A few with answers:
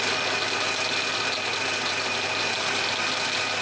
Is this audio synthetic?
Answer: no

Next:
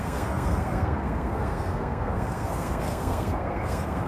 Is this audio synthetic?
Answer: yes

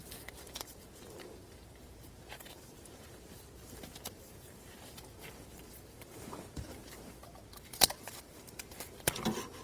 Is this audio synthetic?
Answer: yes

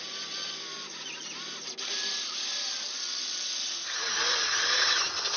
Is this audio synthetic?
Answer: no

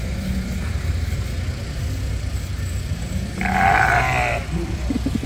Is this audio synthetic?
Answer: no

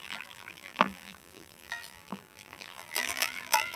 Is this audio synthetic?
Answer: yes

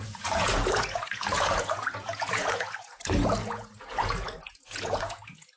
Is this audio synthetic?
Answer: yes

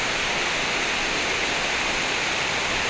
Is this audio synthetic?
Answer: no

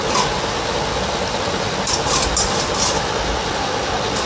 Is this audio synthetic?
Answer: no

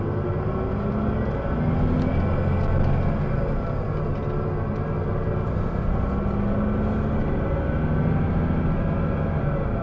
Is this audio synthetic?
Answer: no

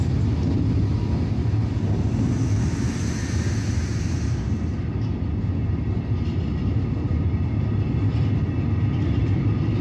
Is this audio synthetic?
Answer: no